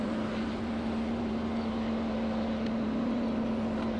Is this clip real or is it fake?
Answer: real